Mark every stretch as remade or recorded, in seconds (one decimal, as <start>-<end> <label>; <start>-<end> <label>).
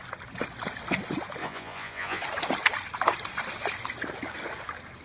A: 0.0-1.4 recorded; 1.4-2.2 remade; 2.2-5.0 recorded